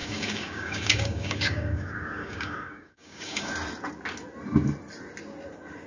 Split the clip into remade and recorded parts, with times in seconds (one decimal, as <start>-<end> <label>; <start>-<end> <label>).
0.0-3.5 remade; 3.5-5.9 recorded